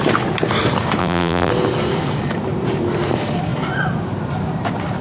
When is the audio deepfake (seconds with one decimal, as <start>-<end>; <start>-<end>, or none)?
1.0-1.5